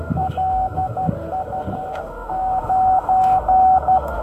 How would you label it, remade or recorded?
remade